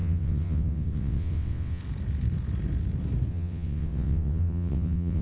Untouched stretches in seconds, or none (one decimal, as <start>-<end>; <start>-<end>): 1.8-3.3

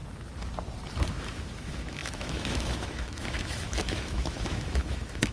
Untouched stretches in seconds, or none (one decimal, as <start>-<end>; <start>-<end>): 0.0-1.1